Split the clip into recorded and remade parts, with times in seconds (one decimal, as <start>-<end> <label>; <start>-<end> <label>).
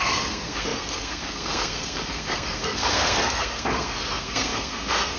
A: 0.0-5.2 remade